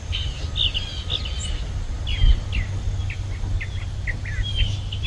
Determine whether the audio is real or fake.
real